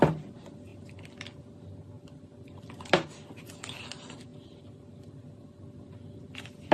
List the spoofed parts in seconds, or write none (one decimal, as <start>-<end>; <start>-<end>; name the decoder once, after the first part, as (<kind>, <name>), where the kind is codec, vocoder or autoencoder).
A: none